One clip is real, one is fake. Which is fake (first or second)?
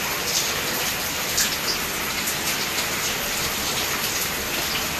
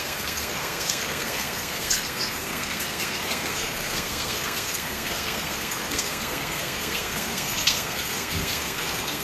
second